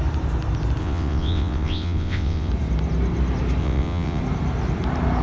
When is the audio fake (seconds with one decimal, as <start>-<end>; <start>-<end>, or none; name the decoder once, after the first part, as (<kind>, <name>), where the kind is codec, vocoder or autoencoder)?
0.8-2.5 (vocoder, WaveNeXt); 3.6-4.2